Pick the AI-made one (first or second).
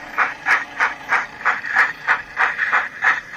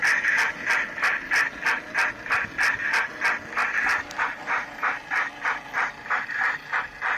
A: first